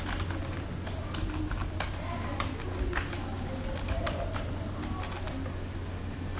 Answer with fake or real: real